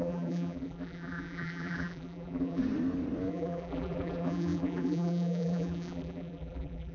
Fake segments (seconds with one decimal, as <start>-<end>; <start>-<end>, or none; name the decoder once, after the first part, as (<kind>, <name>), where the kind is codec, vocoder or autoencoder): 0.0-2.6 (vocoder, BigVGAN v2); 3.3-6.9